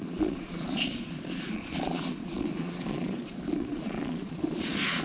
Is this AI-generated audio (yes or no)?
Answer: yes